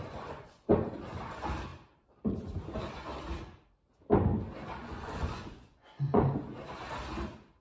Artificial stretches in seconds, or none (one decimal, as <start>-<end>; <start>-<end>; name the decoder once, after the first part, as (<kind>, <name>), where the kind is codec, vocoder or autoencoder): 0.0-0.6 (vocoder, Vocos); 4.8-6.2